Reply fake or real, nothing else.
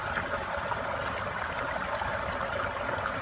real